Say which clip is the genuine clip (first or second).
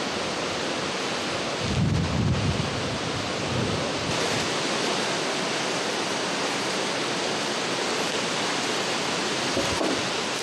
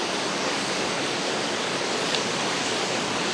first